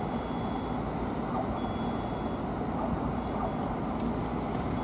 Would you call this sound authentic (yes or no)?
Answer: yes